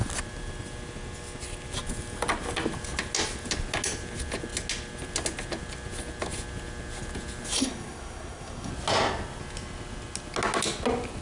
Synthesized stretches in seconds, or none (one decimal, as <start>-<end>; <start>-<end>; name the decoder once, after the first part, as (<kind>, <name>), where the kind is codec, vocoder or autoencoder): 7.6-8.7 (codec, SNAC)